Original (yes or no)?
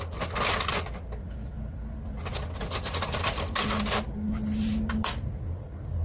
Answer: yes